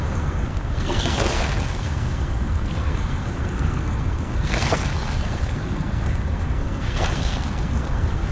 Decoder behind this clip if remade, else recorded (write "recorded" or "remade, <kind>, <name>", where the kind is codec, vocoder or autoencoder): remade, codec, SNAC